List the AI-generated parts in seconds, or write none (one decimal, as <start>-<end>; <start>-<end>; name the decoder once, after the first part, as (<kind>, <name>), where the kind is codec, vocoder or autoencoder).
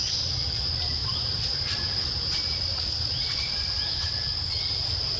1.0-4.1 (vocoder, BigVGAN v2)